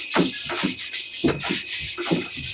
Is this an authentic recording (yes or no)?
yes